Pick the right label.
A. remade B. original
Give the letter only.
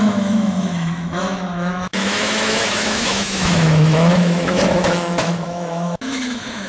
A